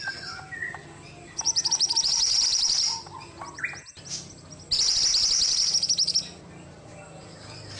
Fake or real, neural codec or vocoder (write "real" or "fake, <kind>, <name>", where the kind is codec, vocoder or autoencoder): real